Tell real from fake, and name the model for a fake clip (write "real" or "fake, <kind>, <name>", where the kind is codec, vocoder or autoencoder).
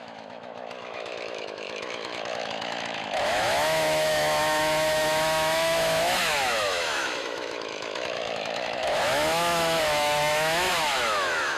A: fake, autoencoder, DAC-VAE